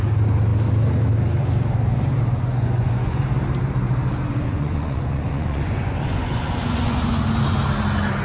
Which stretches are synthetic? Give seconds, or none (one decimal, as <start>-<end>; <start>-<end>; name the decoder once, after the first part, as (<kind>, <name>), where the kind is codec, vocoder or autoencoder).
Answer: 2.3-3.2 (vocoder, Vocos); 4.3-7.2